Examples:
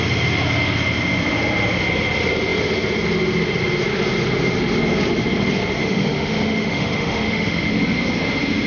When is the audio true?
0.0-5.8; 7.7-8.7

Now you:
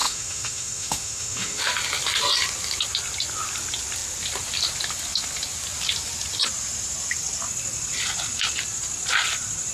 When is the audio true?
1.6-9.7

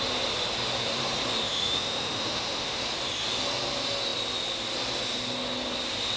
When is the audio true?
0.0-1.4; 2.8-6.2

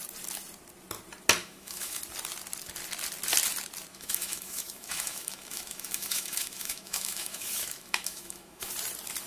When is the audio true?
0.0-1.4; 2.0-3.9; 8.7-9.3